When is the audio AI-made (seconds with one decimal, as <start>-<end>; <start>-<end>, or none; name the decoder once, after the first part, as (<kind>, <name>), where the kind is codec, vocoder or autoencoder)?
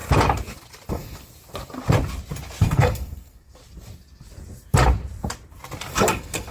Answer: 0.9-1.3 (codec, SNAC); 2.6-3.6; 5.9-6.5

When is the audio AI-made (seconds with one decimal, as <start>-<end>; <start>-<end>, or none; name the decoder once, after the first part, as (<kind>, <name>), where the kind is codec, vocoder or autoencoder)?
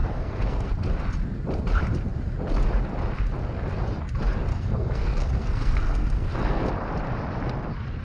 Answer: 0.0-0.7 (codec, SNAC); 4.5-6.7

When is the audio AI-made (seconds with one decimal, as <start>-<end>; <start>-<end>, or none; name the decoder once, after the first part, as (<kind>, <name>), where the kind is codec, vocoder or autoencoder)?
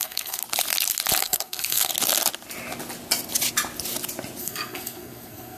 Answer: 0.0-0.4 (codec, SNAC); 1.2-1.9; 4.4-5.6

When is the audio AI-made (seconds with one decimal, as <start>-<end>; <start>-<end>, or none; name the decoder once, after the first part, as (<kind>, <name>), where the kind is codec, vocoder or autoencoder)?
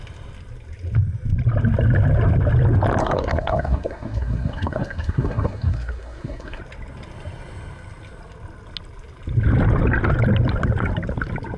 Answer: 3.0-6.6 (codec, SNAC)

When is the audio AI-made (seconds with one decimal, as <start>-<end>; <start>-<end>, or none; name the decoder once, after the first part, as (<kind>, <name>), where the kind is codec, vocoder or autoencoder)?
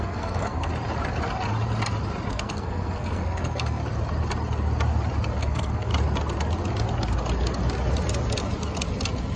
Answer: 0.0-0.7 (codec, SNAC); 2.3-3.8; 5.4-5.9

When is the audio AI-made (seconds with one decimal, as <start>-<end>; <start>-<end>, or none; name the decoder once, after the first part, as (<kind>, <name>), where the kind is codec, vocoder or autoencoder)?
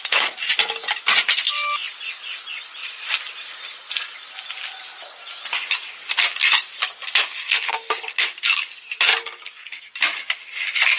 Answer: 7.4-7.9 (codec, SNAC)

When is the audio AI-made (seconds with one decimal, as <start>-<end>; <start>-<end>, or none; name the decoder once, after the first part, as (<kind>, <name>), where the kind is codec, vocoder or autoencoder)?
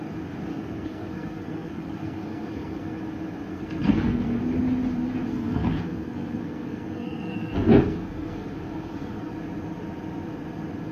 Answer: 0.5-3.0 (codec, SNAC); 3.5-4.4; 5.3-9.3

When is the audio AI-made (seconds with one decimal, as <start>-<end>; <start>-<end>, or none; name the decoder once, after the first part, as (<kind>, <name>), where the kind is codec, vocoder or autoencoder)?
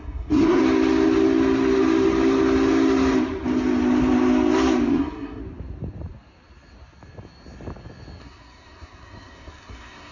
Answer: 0.0-0.6 (codec, SNAC); 4.9-5.4; 8.2-10.1